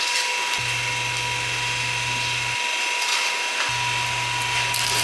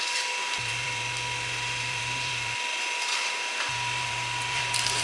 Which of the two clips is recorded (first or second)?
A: first